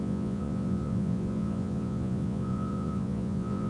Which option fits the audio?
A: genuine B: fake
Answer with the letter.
B